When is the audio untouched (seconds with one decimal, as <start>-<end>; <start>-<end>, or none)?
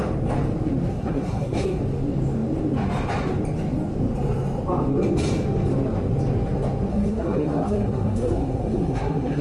0.0-0.9; 1.8-6.9